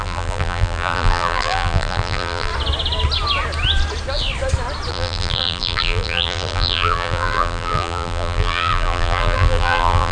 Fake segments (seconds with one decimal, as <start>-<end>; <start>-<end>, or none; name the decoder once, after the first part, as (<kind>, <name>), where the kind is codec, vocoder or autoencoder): 0.0-2.5 (vocoder, BigVGAN v2); 4.9-10.1